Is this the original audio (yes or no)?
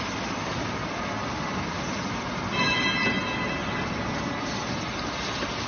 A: yes